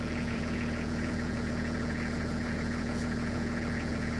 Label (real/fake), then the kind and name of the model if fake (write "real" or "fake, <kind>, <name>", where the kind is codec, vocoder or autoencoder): fake, vocoder, Vocos